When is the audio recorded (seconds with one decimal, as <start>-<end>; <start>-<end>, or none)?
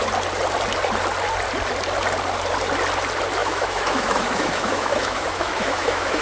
0.0-3.4